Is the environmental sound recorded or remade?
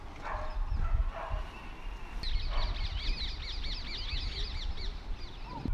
recorded